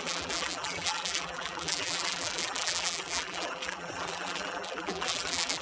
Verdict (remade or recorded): remade